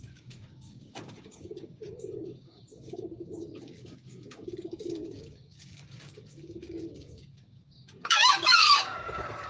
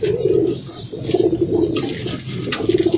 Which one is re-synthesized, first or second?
first